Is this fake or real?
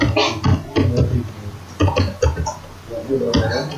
real